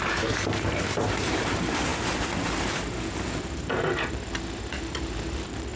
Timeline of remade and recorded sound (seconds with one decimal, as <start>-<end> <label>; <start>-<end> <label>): 0.0-1.9 remade; 1.9-5.8 recorded